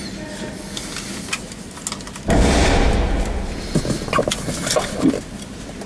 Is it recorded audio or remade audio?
recorded